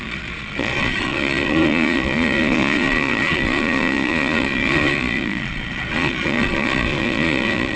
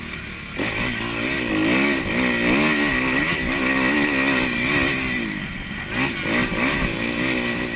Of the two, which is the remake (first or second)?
first